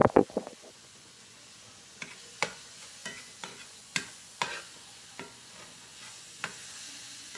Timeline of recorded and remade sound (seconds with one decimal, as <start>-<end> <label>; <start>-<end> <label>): 0.0-7.4 remade